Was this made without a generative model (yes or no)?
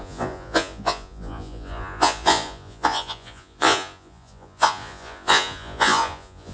no